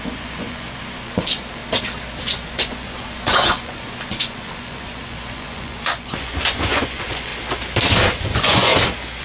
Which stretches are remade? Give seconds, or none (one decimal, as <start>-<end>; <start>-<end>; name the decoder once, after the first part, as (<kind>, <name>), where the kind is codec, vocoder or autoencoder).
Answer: 0.0-1.6 (vocoder, Vocos); 2.2-7.3; 8.2-8.7